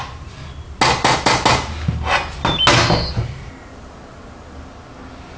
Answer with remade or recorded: recorded